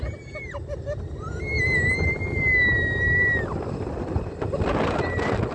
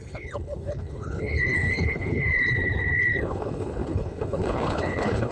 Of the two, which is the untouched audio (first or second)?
first